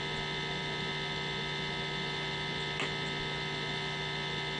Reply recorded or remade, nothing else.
recorded